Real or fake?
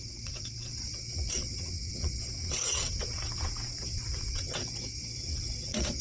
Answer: fake